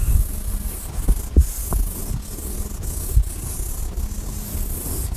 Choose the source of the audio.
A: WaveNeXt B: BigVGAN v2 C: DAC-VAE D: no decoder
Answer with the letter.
D